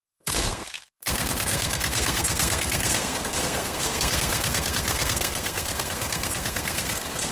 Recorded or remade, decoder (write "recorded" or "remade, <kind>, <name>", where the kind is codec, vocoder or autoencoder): remade, codec, SNAC